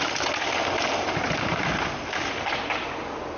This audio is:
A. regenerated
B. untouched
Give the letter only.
B